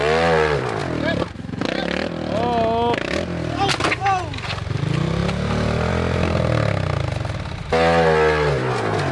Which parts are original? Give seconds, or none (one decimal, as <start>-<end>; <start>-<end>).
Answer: 0.0-9.1